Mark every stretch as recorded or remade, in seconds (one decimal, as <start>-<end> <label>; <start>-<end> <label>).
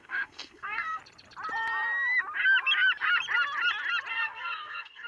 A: 0.0-1.0 remade; 1.0-4.1 recorded; 4.1-5.1 remade